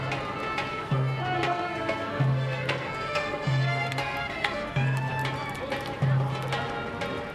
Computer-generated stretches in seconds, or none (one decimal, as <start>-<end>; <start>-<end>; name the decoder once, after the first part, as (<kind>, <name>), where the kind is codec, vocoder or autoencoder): 0.7-5.1 (codec, SNAC)